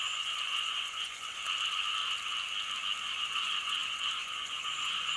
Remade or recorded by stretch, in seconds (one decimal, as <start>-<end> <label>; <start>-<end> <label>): 0.0-1.4 remade; 1.4-3.0 recorded; 3.0-5.2 remade